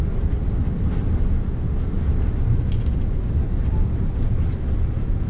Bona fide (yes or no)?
yes